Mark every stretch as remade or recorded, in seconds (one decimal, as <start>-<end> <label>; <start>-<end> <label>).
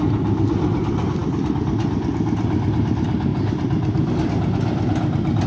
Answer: 0.0-5.5 recorded